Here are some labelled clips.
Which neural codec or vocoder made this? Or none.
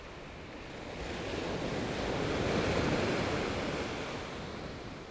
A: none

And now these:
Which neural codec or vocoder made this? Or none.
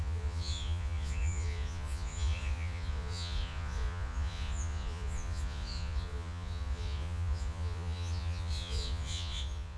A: vocoder, Vocos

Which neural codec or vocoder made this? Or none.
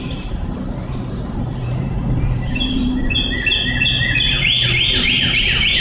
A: vocoder, BigVGAN v2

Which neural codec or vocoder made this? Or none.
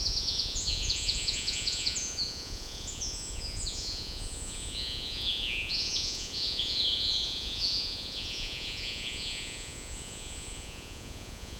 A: vocoder, Vocos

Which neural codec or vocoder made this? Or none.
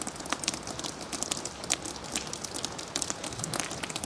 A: none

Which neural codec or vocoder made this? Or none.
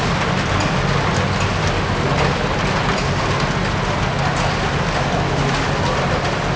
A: none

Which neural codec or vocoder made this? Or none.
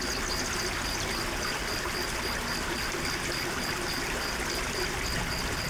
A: none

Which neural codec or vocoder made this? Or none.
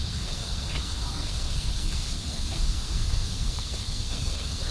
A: codec, SNAC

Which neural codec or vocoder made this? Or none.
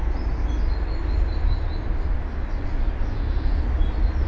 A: none